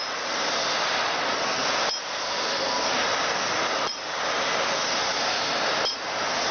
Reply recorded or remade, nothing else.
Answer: recorded